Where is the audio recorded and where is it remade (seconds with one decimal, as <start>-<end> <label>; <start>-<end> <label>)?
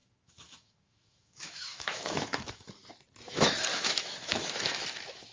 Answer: 0.0-2.7 remade; 2.7-3.7 recorded; 3.7-4.8 remade; 4.8-5.3 recorded